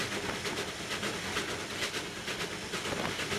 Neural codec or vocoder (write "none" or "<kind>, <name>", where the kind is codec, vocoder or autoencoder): none